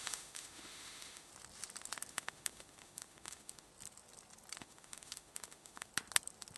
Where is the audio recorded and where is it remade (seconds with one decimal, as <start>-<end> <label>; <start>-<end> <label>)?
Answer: 0.0-1.3 remade; 1.3-2.1 recorded; 2.1-3.7 remade; 3.7-4.6 recorded; 4.6-5.9 remade; 5.9-6.6 recorded